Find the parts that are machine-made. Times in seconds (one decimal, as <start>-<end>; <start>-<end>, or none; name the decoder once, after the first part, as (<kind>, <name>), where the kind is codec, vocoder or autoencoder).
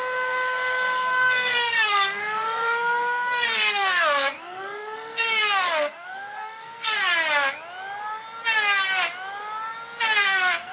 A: 0.0-7.1 (codec, SNAC); 10.2-10.7